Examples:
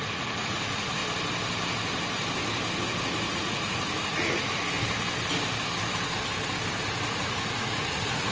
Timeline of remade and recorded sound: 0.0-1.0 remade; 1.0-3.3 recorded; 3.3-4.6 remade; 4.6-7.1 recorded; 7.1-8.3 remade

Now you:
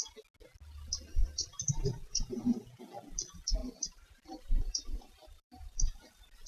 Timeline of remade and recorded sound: 0.0-1.2 recorded; 1.2-2.8 remade; 2.8-3.6 recorded; 3.6-6.1 remade; 6.1-6.5 recorded